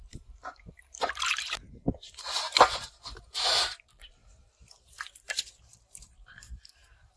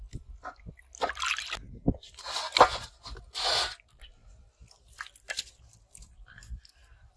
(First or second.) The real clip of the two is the second